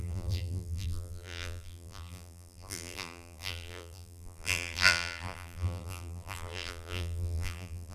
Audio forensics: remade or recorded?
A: remade